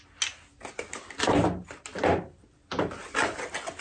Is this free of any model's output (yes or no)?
yes